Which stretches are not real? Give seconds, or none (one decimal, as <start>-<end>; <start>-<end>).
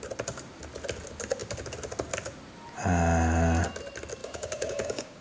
4.2-5.2